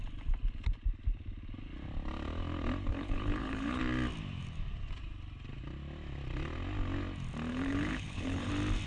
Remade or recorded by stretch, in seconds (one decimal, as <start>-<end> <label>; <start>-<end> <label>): 0.0-2.9 recorded; 2.9-3.8 remade; 3.8-7.5 recorded; 7.5-8.5 remade; 8.5-8.9 recorded